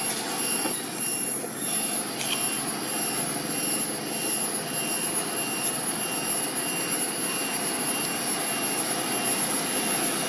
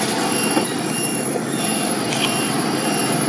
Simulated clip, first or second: second